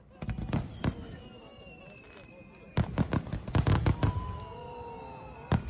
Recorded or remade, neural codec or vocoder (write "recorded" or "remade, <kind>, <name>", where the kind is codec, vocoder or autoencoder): recorded